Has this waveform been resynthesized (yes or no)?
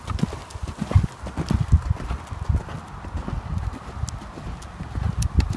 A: no